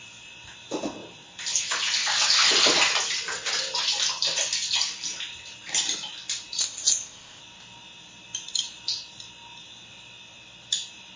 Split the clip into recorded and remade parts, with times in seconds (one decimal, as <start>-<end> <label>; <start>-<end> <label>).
0.0-6.6 recorded; 6.6-7.4 remade; 7.4-11.2 recorded